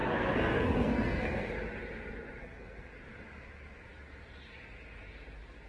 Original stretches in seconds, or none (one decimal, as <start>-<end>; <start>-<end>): 1.5-2.4; 2.9-5.7